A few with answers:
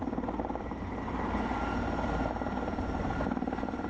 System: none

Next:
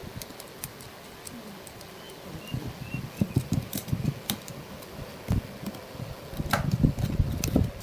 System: none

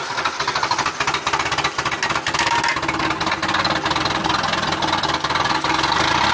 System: none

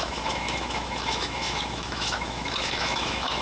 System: autoencoder, DAC-VAE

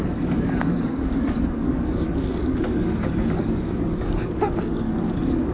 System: codec, DAC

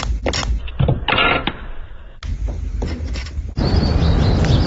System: none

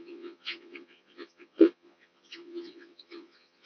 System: vocoder, Vocos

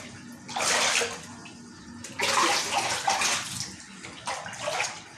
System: none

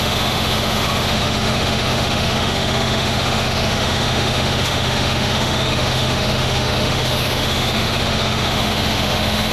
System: autoencoder, DAC-VAE